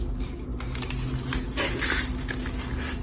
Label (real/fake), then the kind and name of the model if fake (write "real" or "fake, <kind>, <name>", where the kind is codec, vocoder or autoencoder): real